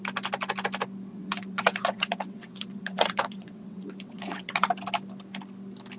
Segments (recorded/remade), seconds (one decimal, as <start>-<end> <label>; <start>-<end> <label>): 0.0-1.1 recorded; 1.1-4.7 remade; 4.7-6.0 recorded

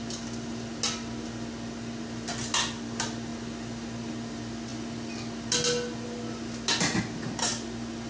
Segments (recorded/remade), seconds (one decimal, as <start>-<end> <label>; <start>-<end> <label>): 0.0-8.1 recorded